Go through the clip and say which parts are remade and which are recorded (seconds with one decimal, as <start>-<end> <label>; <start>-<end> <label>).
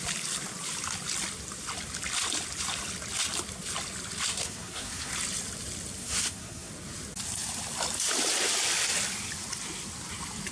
0.0-4.3 recorded; 4.3-5.1 remade; 5.1-6.0 recorded; 6.0-6.7 remade; 6.7-10.5 recorded